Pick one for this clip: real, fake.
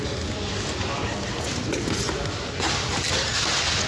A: real